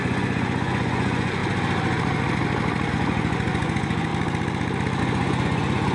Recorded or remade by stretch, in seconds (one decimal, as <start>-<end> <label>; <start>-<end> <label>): 0.0-1.4 remade; 1.4-2.9 recorded; 2.9-4.1 remade; 4.1-5.0 recorded; 5.0-5.9 remade